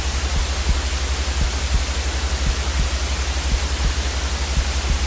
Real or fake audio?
real